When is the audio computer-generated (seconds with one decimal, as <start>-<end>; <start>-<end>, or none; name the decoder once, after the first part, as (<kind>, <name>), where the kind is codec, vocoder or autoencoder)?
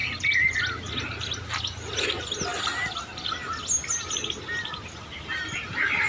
none